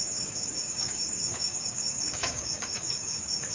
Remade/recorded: remade